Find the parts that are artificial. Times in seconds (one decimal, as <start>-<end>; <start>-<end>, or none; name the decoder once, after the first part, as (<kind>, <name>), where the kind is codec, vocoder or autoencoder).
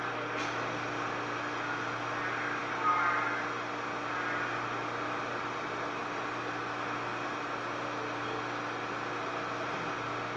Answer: none